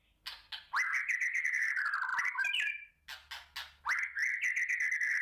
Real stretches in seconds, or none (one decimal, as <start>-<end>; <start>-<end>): 0.0-1.0; 1.7-2.1; 2.9-5.2